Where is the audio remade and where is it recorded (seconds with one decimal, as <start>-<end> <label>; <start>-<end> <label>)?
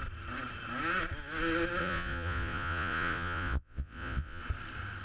0.0-1.8 recorded; 1.8-4.4 remade; 4.4-5.0 recorded